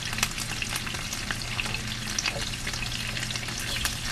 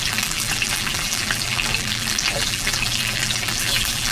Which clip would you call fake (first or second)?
second